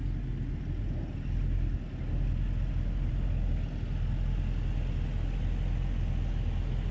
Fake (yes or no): no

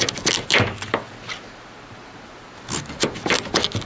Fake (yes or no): no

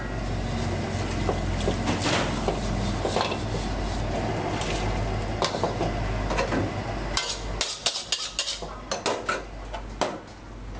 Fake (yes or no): no